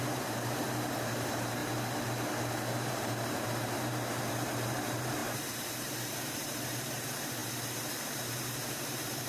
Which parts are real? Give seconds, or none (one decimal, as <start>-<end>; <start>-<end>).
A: 1.6-2.5; 7.4-8.0